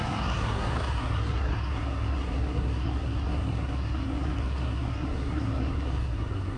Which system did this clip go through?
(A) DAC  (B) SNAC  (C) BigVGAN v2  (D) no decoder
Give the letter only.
B